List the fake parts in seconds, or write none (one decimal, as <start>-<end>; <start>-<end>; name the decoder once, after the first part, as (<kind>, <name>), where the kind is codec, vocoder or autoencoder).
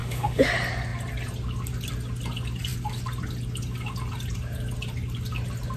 0.0-0.5 (autoencoder, DAC-VAE)